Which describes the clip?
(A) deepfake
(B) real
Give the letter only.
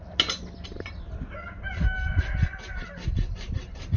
B